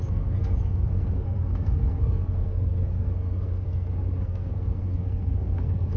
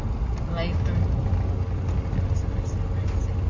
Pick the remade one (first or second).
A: first